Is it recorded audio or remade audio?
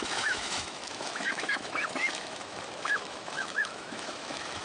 remade